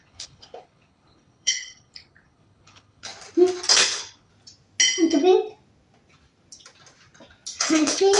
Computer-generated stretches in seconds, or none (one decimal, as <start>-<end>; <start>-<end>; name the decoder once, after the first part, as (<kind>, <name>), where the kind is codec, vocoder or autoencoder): 0.0-3.1 (codec, HILCodec); 3.7-4.3; 7.6-8.2